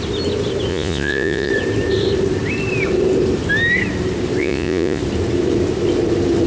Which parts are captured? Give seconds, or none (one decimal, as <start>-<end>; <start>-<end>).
0.0-0.7; 1.5-4.4; 5.0-6.5